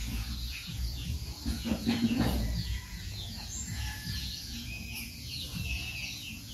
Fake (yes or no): yes